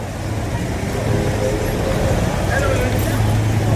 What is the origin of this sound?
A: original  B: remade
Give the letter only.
A